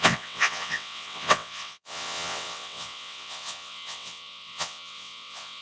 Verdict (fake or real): fake